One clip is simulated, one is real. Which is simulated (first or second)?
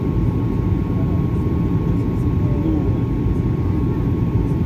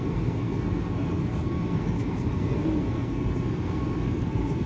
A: second